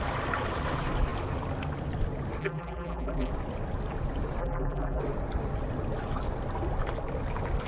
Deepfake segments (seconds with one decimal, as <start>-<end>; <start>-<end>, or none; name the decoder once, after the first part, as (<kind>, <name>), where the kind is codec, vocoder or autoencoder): 2.4-3.3 (vocoder, BigVGAN v2); 4.4-5.0